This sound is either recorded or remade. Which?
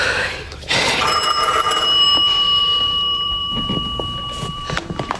remade